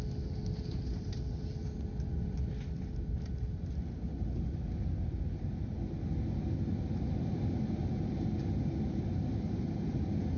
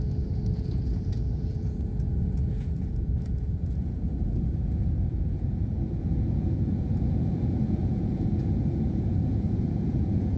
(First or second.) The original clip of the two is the first